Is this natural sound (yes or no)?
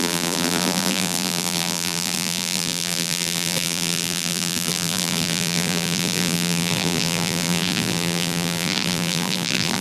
no